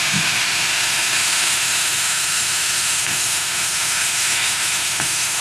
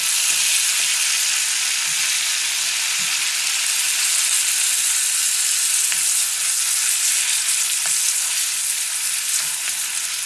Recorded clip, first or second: second